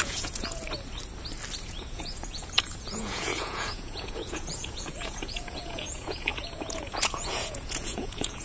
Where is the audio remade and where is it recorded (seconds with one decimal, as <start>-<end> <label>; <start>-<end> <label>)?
0.0-0.6 remade; 0.6-1.6 recorded; 1.6-8.4 remade